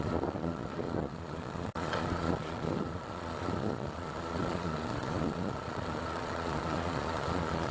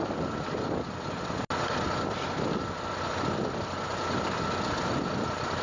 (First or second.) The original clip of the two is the second